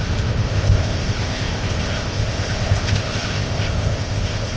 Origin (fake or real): fake